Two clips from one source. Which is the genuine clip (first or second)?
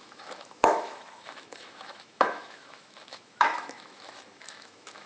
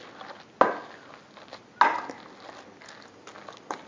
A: second